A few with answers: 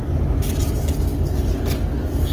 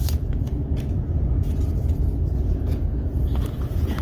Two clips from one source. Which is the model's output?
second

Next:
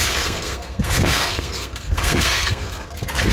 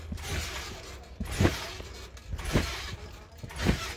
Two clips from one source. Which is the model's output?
first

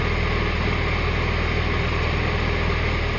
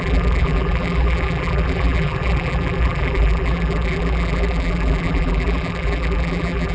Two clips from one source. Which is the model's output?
second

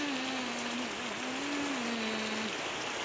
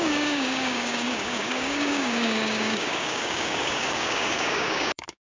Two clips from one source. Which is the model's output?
second